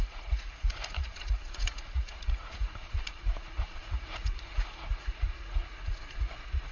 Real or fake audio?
fake